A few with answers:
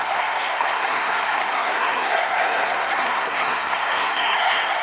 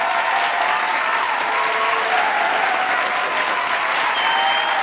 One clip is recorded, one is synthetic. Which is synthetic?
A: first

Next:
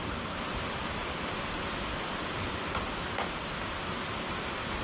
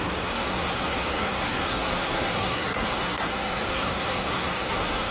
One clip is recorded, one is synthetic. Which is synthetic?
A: second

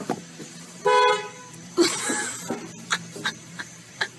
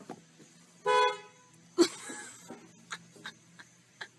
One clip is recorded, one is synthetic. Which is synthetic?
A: first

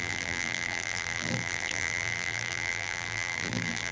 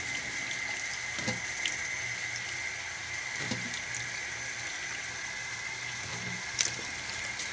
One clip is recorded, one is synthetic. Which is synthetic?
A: first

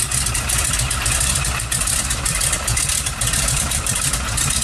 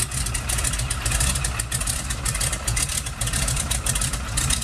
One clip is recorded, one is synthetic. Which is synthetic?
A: first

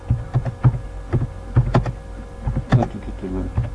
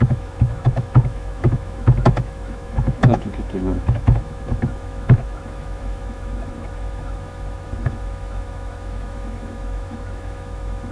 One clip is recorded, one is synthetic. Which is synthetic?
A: second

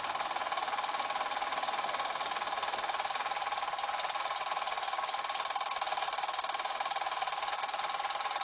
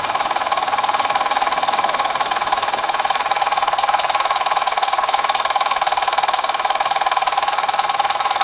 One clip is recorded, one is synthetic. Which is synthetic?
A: second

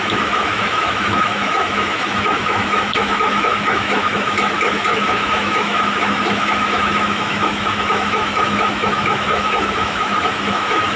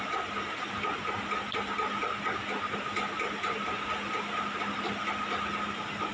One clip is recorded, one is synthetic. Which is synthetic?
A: first